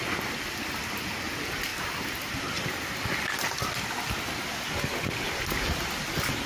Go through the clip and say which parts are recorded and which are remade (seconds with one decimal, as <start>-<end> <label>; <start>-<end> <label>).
0.0-6.5 recorded